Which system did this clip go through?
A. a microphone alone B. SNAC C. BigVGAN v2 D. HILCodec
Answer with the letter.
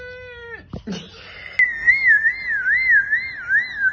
A